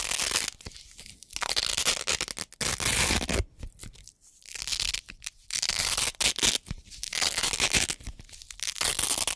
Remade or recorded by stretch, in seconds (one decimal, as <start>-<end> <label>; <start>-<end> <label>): 0.0-9.4 recorded